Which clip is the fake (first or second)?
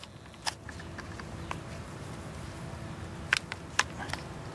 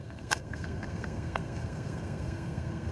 second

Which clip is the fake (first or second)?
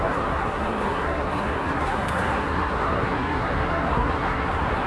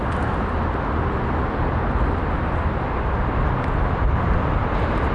first